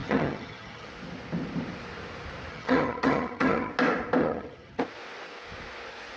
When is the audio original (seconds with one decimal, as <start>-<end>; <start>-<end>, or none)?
0.9-2.5; 3.7-4.2; 4.8-6.2